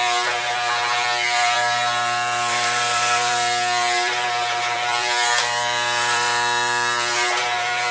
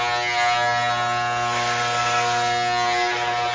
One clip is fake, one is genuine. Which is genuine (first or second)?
second